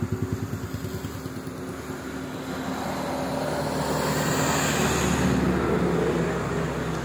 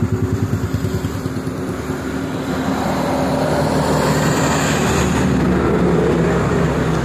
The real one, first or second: first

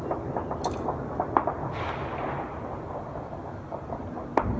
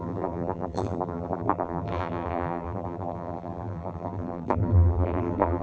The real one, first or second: first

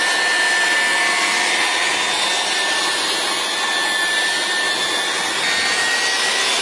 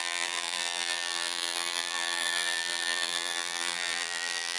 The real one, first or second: first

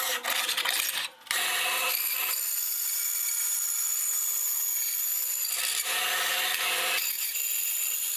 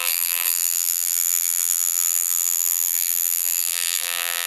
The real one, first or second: first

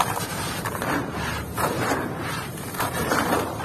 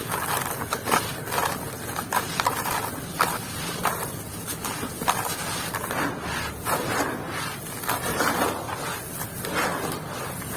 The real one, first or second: second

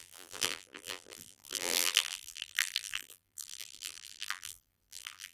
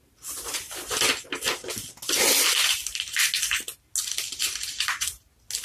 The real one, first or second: second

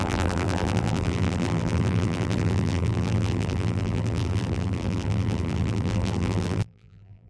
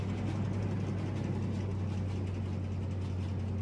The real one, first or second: second